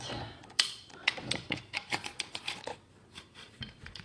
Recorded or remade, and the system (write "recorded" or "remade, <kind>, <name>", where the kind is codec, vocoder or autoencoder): remade, vocoder, Vocos